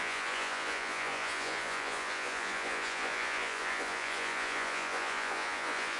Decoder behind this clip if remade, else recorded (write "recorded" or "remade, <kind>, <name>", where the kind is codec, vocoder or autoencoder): remade, vocoder, Vocos